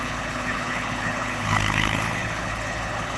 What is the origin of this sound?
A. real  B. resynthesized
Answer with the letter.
B